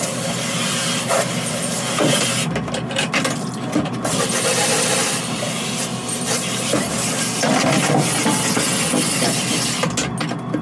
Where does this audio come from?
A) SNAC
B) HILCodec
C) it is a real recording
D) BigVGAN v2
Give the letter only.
C